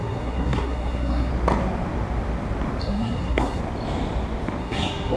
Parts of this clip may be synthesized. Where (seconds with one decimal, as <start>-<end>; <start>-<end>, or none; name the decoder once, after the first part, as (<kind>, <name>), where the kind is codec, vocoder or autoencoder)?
0.0-1.3 (codec, SNAC); 2.8-3.6; 4.6-5.2